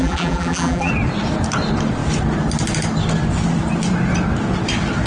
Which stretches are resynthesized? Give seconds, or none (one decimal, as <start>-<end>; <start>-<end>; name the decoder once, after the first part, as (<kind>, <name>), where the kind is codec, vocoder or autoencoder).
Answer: 0.0-0.9 (vocoder, BigVGAN v2)